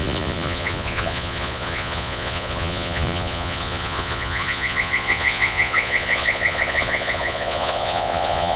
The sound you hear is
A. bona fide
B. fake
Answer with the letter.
B